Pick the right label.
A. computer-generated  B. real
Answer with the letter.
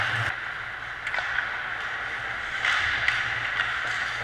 B